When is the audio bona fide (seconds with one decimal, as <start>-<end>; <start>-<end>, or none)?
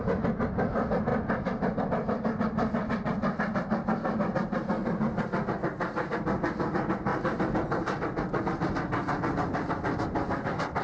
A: 0.0-10.8